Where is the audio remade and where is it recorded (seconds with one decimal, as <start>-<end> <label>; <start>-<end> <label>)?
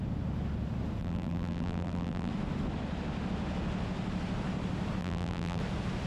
0.0-1.0 recorded; 1.0-2.3 remade; 2.3-5.0 recorded; 5.0-5.6 remade; 5.6-6.1 recorded